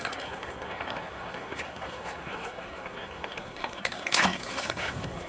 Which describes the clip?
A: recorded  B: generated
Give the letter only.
B